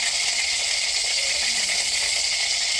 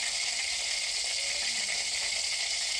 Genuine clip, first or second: second